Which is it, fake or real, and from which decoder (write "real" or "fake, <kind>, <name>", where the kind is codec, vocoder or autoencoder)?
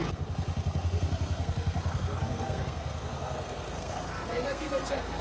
fake, codec, SNAC